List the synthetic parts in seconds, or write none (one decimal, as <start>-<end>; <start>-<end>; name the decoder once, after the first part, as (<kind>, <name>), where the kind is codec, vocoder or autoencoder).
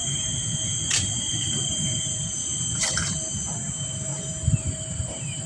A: 1.7-2.5 (vocoder, BigVGAN v2); 3.3-4.1; 4.8-5.5